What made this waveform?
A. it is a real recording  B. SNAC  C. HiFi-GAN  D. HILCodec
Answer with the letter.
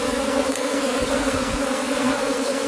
B